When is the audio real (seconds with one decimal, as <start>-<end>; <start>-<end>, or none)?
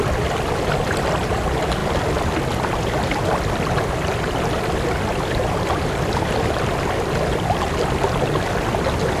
0.0-9.2